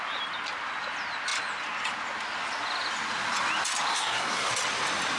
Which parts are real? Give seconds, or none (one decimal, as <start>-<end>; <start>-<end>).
0.0-3.9; 4.5-5.2